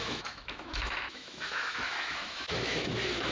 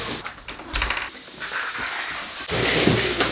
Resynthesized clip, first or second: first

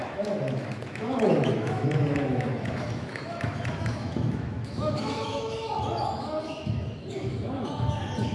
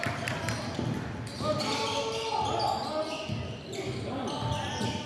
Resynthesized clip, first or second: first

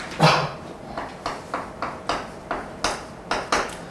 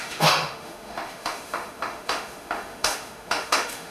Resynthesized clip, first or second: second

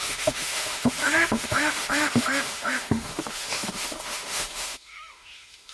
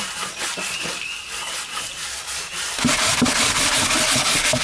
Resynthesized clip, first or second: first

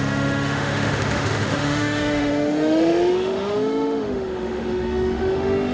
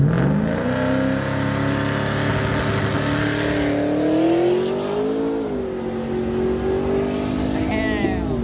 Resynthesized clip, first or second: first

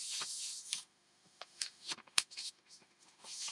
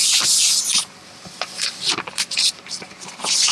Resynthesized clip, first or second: first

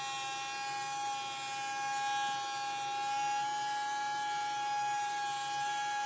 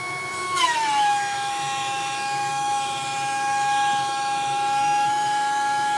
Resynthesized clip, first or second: second